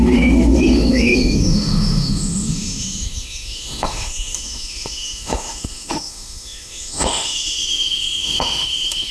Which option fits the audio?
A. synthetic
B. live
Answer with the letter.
A